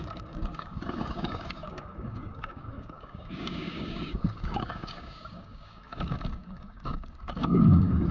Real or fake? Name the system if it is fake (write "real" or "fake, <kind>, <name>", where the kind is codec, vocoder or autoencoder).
fake, codec, DAC